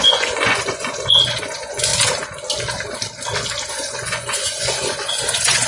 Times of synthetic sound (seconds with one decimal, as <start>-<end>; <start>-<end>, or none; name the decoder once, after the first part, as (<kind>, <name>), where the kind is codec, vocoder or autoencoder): 0.0-1.9 (vocoder, Vocos); 3.7-5.7